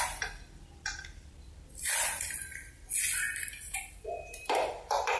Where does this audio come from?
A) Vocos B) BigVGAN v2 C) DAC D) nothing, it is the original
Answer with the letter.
B